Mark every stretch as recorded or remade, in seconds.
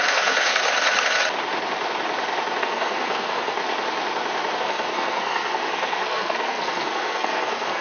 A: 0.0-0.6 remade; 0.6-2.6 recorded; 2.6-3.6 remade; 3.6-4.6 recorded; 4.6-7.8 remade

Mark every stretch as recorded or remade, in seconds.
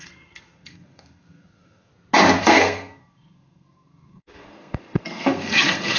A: 0.0-1.9 remade; 1.9-2.4 recorded; 2.4-6.0 remade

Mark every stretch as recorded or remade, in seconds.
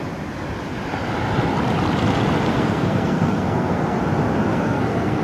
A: 0.0-2.5 recorded; 2.5-4.0 remade; 4.0-4.5 recorded; 4.5-5.2 remade